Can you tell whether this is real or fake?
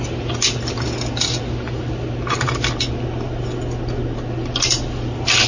real